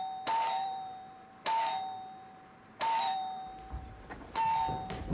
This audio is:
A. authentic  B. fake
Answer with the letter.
A